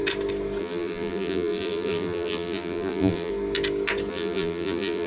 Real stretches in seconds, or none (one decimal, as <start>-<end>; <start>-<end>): 0.0-0.6; 3.3-4.1